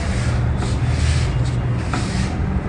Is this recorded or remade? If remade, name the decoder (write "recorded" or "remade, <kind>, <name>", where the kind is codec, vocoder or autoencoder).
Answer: recorded